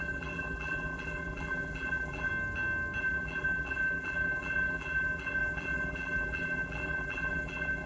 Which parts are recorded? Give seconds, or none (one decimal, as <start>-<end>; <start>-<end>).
2.3-3.0